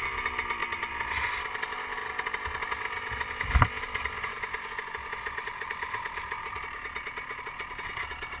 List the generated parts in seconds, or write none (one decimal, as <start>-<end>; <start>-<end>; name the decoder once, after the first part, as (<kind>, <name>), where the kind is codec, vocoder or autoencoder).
none